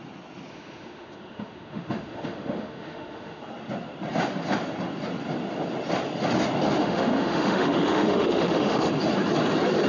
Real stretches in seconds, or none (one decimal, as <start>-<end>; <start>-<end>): 0.0-0.5; 3.4-6.8; 8.9-9.9